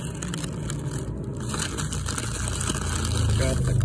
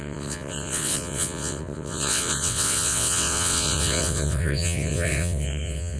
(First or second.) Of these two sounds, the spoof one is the second